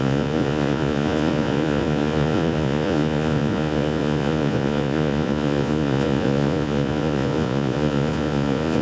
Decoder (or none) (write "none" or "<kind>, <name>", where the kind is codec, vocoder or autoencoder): vocoder, Vocos